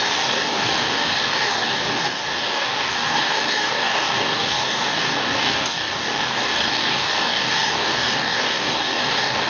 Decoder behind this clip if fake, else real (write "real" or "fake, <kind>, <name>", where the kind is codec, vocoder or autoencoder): fake, codec, DAC